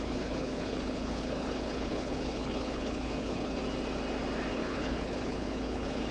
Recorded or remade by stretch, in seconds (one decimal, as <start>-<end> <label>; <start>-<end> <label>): 0.0-3.6 remade; 3.6-4.5 recorded; 4.5-6.1 remade